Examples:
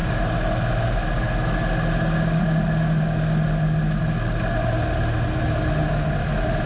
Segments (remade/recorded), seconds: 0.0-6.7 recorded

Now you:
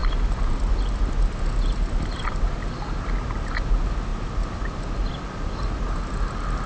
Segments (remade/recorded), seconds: 0.0-6.7 recorded

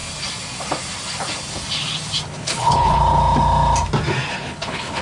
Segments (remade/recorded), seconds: 0.0-2.3 recorded; 2.3-3.0 remade; 3.0-4.3 recorded; 4.3-5.0 remade

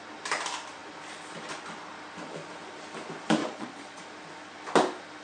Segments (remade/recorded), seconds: 0.0-3.4 recorded; 3.4-4.0 remade; 4.0-5.2 recorded

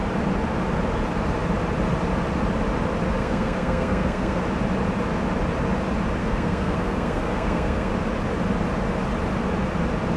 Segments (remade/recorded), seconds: 0.0-3.2 recorded; 3.2-4.4 remade; 4.4-6.2 recorded; 6.2-7.9 remade; 7.9-10.2 recorded

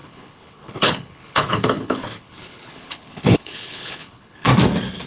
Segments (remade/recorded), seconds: 0.0-4.5 remade; 4.5-5.1 recorded

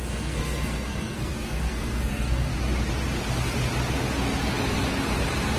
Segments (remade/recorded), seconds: 0.0-2.5 remade; 2.5-5.6 recorded

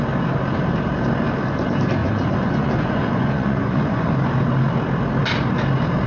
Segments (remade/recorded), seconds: 0.0-2.0 recorded; 2.0-4.1 remade; 4.1-6.1 recorded